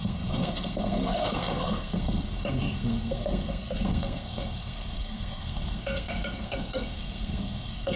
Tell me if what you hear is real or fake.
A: fake